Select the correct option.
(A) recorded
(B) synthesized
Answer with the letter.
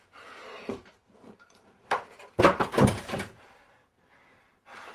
B